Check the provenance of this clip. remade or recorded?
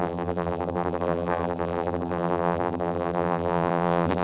remade